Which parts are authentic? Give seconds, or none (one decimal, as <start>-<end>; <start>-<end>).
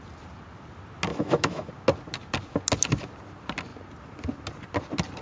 0.0-1.1; 1.7-5.2